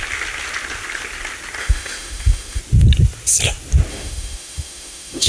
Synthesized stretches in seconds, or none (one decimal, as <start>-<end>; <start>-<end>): 1.6-2.6; 3.9-5.3